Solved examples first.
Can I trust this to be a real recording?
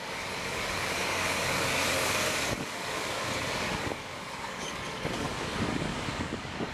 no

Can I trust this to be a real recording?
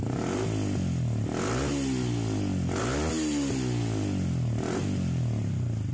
yes